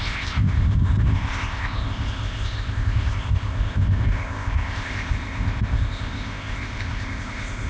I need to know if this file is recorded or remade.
remade